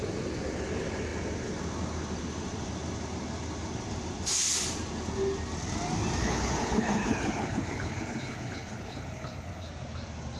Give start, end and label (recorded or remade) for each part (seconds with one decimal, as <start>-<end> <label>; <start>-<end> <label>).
0.0-6.2 recorded; 6.2-9.7 remade; 9.7-10.4 recorded